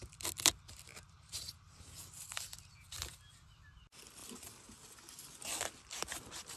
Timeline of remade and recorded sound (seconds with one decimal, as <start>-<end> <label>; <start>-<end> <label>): 0.0-0.9 recorded; 0.9-1.9 remade; 1.9-6.6 recorded